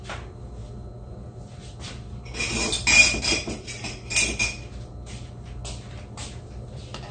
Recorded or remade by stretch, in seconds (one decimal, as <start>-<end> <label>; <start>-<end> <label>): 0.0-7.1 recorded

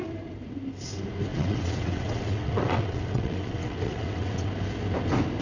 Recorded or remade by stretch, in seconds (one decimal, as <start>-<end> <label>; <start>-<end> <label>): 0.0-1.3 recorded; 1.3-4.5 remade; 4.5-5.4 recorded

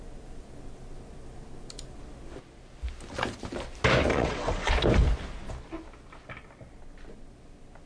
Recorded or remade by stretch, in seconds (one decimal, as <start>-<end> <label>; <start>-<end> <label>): 0.0-4.1 recorded; 4.1-4.7 remade; 4.7-7.9 recorded

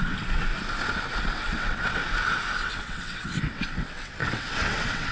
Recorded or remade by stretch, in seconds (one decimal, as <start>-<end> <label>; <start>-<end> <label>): 0.0-0.5 remade; 0.5-1.2 recorded; 1.2-2.0 remade; 2.0-2.6 recorded; 2.6-5.1 remade

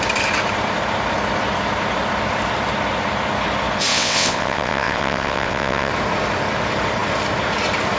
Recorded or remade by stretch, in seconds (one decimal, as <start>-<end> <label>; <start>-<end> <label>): 0.0-3.9 recorded; 3.9-5.9 remade; 5.9-8.0 recorded

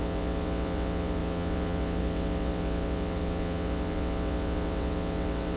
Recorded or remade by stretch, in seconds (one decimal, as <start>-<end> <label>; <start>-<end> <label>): 0.0-5.6 remade